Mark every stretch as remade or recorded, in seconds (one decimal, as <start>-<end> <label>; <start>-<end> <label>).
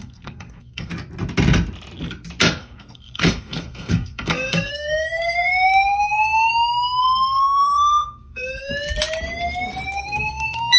0.0-0.9 remade; 0.9-2.6 recorded; 2.6-6.5 remade; 6.5-7.0 recorded; 7.0-8.7 remade; 8.7-9.9 recorded; 9.9-10.8 remade